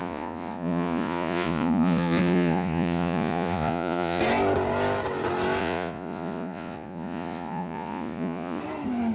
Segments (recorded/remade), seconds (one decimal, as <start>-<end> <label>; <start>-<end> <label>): 0.0-4.2 remade; 4.2-5.6 recorded; 5.6-8.6 remade; 8.6-9.1 recorded